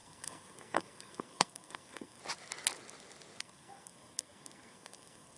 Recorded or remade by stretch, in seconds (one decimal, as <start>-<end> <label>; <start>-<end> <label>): 0.0-2.2 remade; 2.2-3.4 recorded; 3.4-5.4 remade